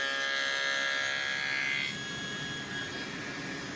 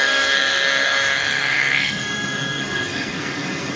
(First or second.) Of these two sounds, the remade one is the second